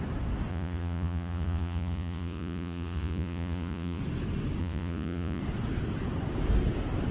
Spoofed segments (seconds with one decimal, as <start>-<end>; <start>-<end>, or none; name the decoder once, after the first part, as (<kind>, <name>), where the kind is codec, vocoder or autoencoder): 0.5-4.0 (vocoder, Vocos); 4.6-5.4